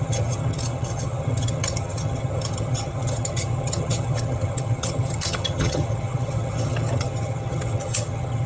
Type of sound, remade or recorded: remade